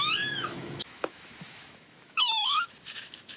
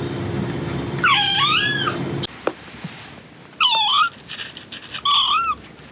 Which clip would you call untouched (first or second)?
second